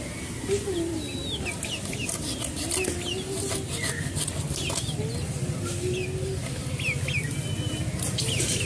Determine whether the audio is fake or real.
real